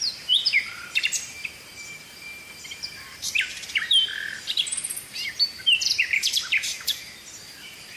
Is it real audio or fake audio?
fake